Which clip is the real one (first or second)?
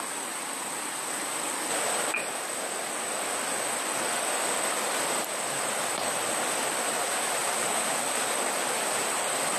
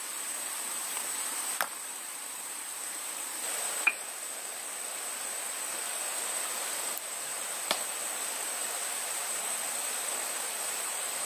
first